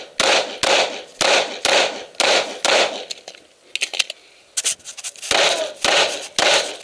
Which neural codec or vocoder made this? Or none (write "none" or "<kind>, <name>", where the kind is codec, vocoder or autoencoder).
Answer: none